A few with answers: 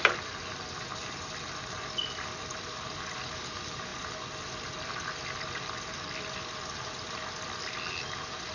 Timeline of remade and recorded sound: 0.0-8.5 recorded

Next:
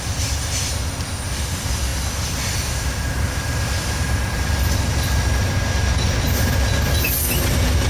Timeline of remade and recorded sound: 0.0-7.9 recorded